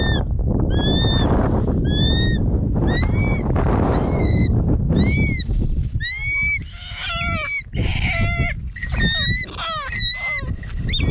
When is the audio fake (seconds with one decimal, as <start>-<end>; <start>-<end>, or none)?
4.2-4.9